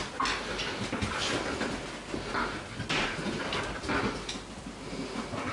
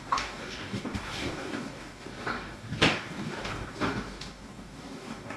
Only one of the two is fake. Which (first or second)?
second